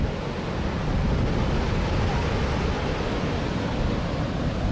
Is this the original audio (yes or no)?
yes